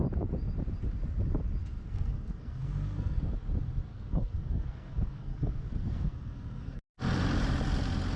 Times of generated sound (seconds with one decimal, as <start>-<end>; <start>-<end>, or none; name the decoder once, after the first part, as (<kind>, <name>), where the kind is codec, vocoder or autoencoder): 1.6-3.3 (codec, SNAC); 3.9-6.8